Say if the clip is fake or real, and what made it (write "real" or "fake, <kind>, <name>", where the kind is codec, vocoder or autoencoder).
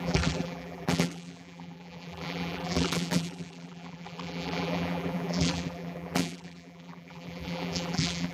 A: fake, vocoder, BigVGAN v2